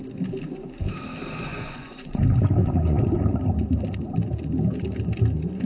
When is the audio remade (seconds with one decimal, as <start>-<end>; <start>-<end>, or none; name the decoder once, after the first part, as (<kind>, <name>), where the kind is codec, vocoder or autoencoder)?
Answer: 1.5-2.1 (vocoder, Vocos); 2.6-3.2